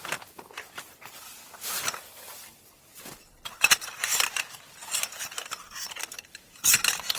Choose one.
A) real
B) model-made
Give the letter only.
A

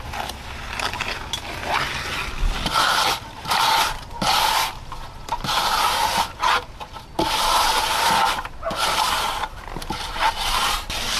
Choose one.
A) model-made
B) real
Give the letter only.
B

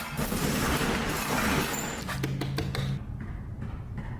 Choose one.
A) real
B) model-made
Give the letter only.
A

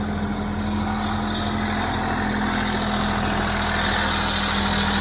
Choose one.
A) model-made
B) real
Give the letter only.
B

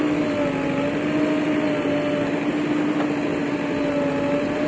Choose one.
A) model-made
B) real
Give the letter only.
B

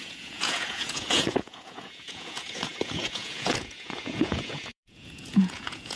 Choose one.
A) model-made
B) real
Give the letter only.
A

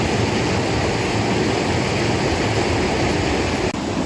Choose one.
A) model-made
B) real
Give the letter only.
B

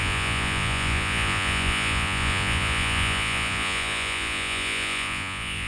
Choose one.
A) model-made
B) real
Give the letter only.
A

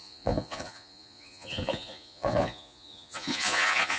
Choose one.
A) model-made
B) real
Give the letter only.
A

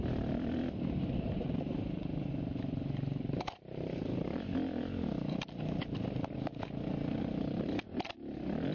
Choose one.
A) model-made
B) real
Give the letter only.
B